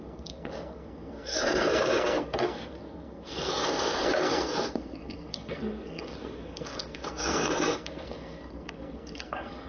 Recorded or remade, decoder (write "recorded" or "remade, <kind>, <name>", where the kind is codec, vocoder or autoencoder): remade, codec, SNAC